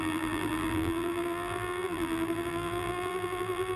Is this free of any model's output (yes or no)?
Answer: no